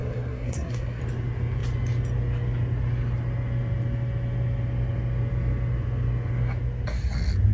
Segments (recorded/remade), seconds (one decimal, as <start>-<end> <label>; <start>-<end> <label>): 0.0-1.0 remade; 1.0-7.5 recorded